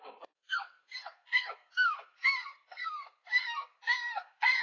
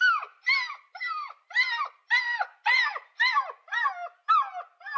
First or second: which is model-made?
first